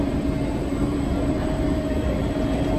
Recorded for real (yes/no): no